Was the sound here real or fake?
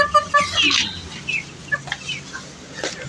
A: real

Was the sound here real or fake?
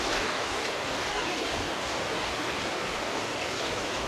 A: fake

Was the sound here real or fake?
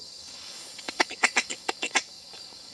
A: fake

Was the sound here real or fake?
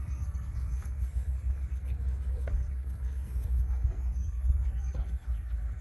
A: fake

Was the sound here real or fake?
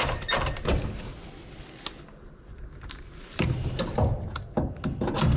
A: real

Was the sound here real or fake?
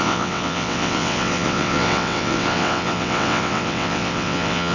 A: fake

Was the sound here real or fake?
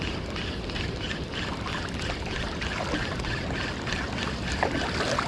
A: real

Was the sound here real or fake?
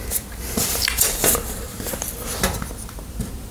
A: real